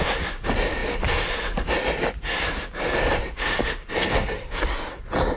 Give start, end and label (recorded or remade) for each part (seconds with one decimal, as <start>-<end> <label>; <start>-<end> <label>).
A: 0.0-4.2 recorded; 4.2-4.9 remade; 4.9-5.4 recorded